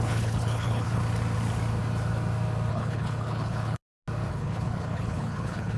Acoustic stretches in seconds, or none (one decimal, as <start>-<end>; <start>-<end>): 1.0-2.7; 3.8-4.3